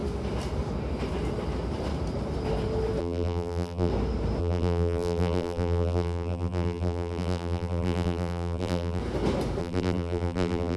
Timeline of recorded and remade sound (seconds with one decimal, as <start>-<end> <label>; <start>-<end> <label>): 0.0-3.0 recorded; 3.0-3.9 remade; 3.9-4.4 recorded; 4.4-9.0 remade; 9.0-9.6 recorded; 9.6-10.8 remade